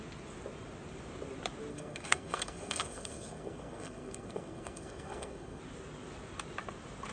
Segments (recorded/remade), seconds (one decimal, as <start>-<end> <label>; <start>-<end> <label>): 0.0-1.7 recorded; 1.7-5.6 remade; 5.6-7.1 recorded